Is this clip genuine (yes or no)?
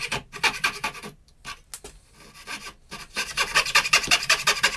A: yes